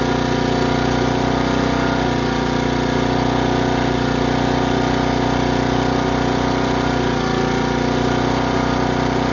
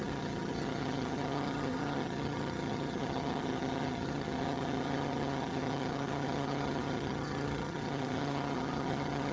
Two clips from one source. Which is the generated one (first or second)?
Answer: second